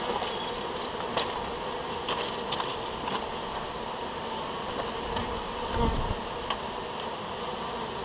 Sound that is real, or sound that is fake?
real